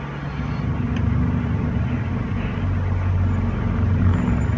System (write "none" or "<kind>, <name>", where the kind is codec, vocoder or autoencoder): none